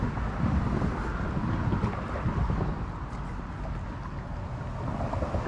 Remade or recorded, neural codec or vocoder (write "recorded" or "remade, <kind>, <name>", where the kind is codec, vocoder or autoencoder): recorded